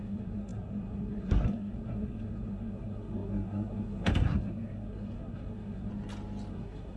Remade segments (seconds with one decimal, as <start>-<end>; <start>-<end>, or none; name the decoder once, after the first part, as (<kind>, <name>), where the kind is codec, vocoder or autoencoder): 0.0-5.9 (codec, SNAC); 6.5-7.0